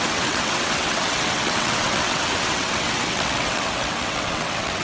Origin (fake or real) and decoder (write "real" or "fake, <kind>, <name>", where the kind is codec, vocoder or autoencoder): fake, vocoder, WaveNeXt